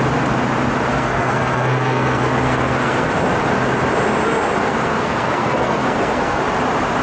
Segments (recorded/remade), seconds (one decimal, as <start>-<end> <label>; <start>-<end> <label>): 0.0-0.9 recorded; 0.9-3.1 remade; 3.1-4.6 recorded; 4.6-6.4 remade; 6.4-7.0 recorded